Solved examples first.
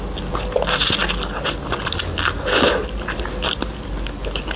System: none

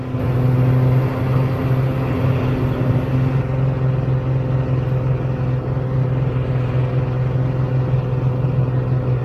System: none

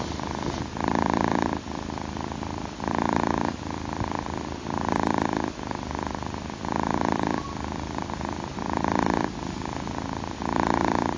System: none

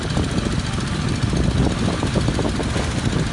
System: none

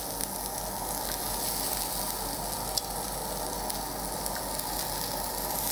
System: none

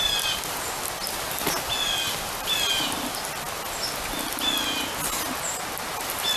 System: none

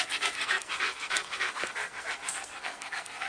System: codec, SNAC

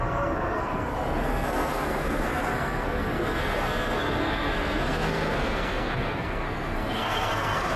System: codec, SNAC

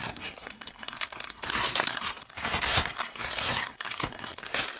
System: codec, SNAC